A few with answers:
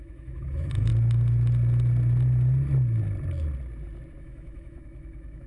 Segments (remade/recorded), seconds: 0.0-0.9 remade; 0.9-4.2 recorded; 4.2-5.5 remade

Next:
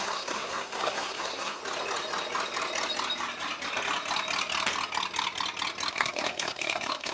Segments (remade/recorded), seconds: 0.0-1.6 remade; 1.6-5.9 recorded; 5.9-7.1 remade

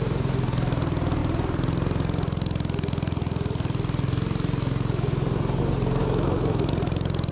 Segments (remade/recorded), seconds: 0.0-6.0 recorded; 6.0-6.7 remade; 6.7-7.3 recorded

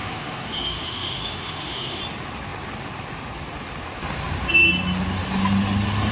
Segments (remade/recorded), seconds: 0.0-2.0 remade; 2.0-6.1 recorded

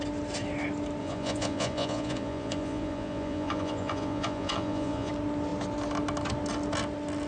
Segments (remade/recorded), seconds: 0.0-1.0 recorded; 1.0-5.1 remade; 5.1-7.3 recorded

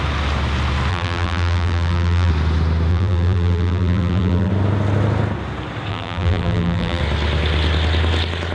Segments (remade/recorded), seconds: 0.0-0.9 recorded; 0.9-2.3 remade; 2.3-2.9 recorded; 2.9-4.5 remade; 4.5-5.9 recorded; 5.9-7.0 remade; 7.0-8.5 recorded